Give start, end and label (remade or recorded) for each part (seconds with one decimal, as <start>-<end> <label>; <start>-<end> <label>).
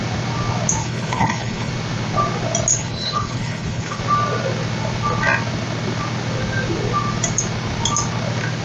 0.0-0.8 recorded; 0.8-1.7 remade; 1.7-2.7 recorded; 2.7-4.0 remade; 4.0-8.6 recorded